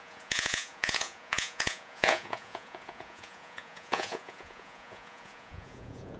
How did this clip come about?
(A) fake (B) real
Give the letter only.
A